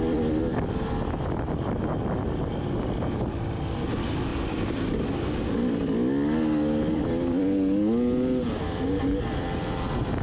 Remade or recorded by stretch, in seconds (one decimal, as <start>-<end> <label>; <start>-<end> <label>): 0.0-10.2 recorded